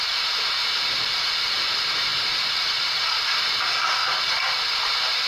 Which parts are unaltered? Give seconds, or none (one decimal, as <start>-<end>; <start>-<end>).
0.6-1.5; 4.0-4.8